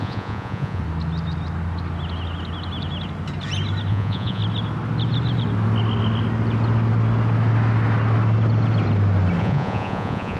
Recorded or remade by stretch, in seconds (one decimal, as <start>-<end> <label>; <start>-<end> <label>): 0.0-0.8 remade; 0.8-3.9 recorded; 3.9-4.4 remade; 4.4-9.4 recorded; 9.4-10.4 remade